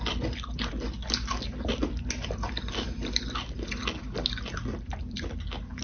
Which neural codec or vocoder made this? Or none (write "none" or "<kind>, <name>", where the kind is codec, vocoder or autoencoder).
none